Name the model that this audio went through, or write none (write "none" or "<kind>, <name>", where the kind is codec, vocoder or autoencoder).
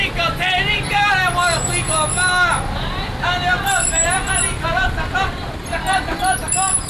none